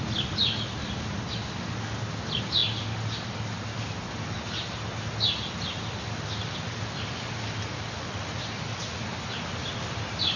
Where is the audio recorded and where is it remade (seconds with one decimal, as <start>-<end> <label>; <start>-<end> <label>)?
0.0-10.4 recorded